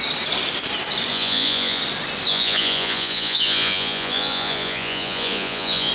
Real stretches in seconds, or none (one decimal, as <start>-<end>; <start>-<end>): 0.0-1.1; 1.8-2.3

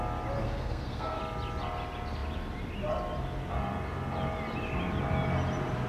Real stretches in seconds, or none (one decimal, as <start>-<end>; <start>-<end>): 0.0-0.4; 1.2-5.9

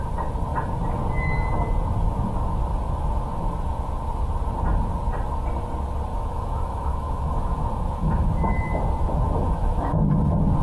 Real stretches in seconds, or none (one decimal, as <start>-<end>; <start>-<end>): 0.0-6.1; 8.8-9.4; 10.0-10.6

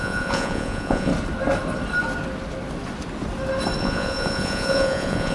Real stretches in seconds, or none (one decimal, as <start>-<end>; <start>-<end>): 1.1-3.8